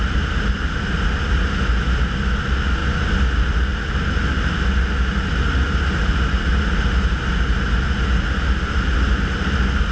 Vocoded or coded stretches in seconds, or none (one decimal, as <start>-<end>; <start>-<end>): none